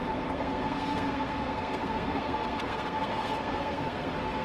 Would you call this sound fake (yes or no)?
yes